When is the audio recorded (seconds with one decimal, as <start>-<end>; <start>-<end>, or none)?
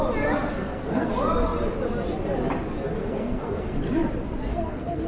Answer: 0.0-0.6; 1.1-3.0; 3.8-4.5